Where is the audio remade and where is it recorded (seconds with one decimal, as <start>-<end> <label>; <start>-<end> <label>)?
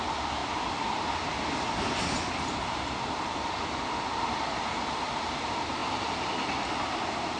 0.0-7.4 recorded